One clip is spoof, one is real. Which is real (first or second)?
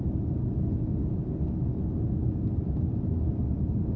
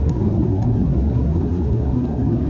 first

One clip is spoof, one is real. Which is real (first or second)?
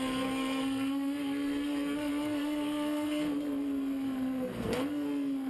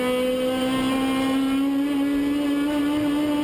second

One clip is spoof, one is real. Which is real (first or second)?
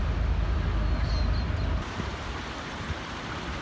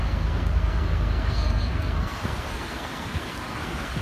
first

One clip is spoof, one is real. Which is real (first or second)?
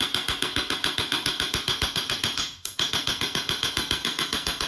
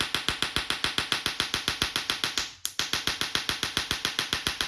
second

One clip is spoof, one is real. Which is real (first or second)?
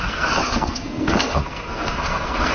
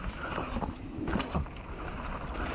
second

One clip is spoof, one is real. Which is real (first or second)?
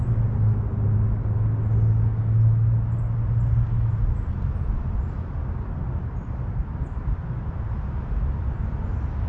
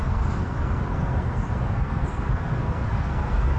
first